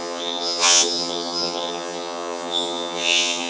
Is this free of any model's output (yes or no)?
no